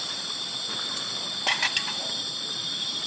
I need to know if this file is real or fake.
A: real